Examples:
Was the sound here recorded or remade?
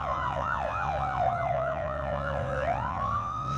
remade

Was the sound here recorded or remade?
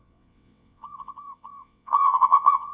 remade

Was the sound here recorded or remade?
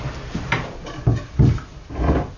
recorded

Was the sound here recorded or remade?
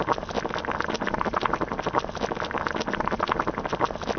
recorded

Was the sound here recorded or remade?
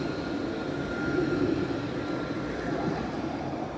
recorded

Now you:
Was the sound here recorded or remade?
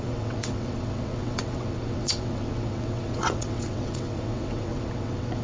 remade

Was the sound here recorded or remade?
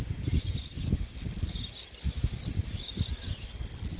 recorded